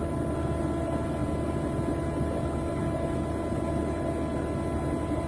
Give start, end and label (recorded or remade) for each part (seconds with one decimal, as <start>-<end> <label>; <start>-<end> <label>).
0.0-5.3 recorded